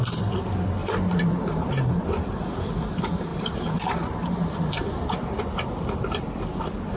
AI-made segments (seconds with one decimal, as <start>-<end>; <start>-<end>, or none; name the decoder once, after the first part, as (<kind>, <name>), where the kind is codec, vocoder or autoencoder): 0.8-2.0 (vocoder, BigVGAN v2); 3.3-5.4